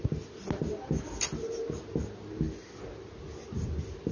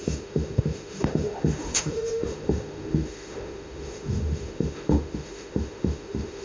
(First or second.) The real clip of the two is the first